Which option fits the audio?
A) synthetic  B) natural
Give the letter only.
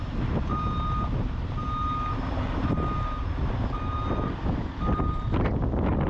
B